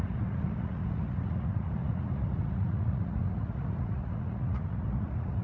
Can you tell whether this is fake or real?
fake